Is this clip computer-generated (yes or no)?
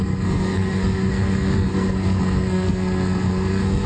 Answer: yes